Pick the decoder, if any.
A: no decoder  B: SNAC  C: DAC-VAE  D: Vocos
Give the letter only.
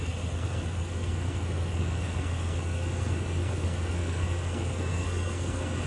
B